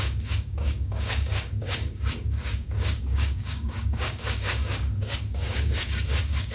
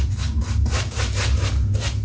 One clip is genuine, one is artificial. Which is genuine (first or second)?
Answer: second